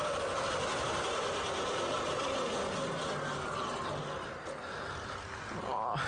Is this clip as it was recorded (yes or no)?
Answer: yes